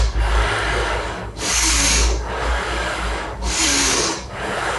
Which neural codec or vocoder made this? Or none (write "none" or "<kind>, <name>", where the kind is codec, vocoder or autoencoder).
codec, DAC